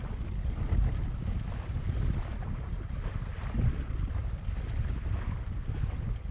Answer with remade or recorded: recorded